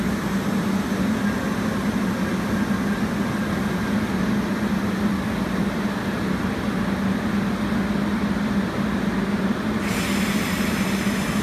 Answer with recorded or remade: recorded